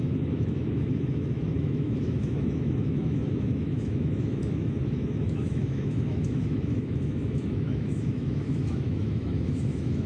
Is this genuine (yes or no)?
no